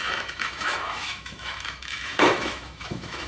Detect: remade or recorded remade